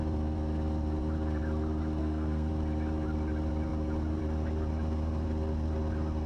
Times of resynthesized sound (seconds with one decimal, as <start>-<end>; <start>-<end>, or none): 2.0-2.5